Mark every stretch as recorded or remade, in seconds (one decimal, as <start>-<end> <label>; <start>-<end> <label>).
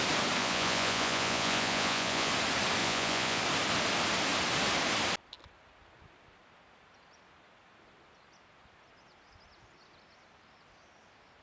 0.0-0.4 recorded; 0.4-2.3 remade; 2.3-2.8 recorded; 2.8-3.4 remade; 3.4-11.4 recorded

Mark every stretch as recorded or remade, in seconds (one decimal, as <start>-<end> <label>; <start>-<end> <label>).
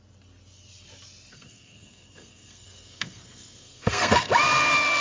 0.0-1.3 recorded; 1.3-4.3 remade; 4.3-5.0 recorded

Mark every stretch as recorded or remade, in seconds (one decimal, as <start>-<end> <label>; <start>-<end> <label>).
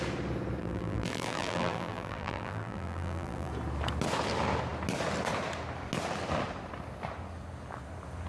0.0-0.6 recorded; 0.6-3.5 remade; 3.5-8.3 recorded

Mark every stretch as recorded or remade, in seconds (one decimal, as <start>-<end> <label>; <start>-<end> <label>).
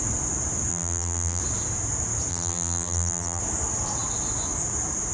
0.0-0.7 recorded; 0.7-1.4 remade; 1.4-2.3 recorded; 2.3-3.4 remade; 3.4-5.1 recorded